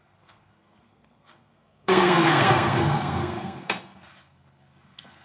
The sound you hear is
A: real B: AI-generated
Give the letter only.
B